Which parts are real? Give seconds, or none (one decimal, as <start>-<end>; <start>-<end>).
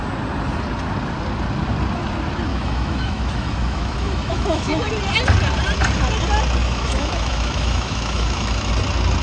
0.0-2.5; 4.9-6.6; 8.7-9.2